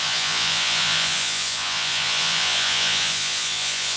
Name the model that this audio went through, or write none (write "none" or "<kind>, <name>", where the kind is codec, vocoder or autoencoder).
vocoder, Vocos